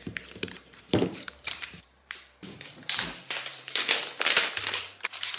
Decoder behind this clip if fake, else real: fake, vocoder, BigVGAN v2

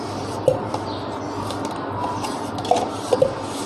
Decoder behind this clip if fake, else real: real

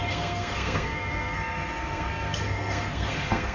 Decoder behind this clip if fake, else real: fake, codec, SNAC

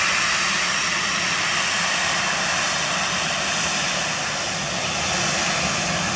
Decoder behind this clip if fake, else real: fake, vocoder, BigVGAN v2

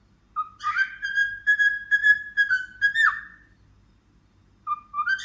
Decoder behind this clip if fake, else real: real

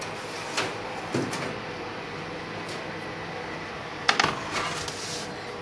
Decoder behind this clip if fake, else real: real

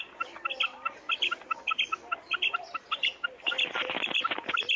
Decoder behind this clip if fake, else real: real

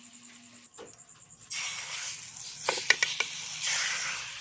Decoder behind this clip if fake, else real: real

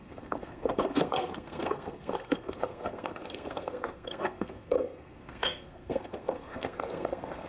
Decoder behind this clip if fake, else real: fake, codec, SNAC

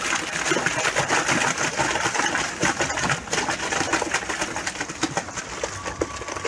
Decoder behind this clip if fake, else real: real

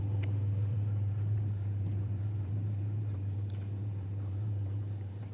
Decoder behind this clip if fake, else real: fake, vocoder, BigVGAN v2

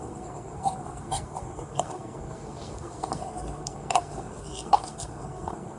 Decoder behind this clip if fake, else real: fake, codec, SNAC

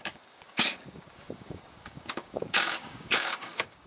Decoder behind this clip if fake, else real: fake, codec, DAC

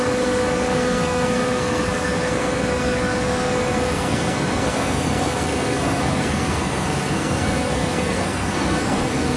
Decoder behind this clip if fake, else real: fake, codec, SNAC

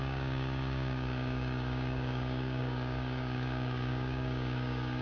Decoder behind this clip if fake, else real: fake, codec, DAC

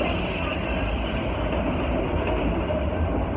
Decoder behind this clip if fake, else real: real